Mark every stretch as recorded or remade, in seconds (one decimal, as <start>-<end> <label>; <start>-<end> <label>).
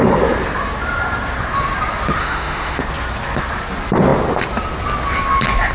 0.0-2.2 recorded; 2.2-2.8 remade; 2.8-5.7 recorded